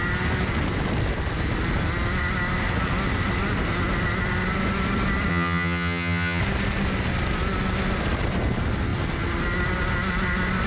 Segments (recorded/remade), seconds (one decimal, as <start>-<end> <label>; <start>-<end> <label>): 0.0-5.3 recorded; 5.3-6.4 remade; 6.4-10.7 recorded